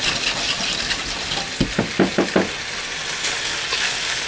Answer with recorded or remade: recorded